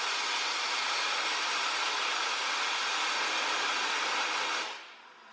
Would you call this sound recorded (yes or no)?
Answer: yes